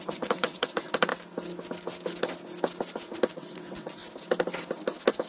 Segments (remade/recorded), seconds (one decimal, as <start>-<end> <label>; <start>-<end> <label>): 0.0-1.1 remade; 1.1-3.3 recorded; 3.3-4.0 remade; 4.0-5.3 recorded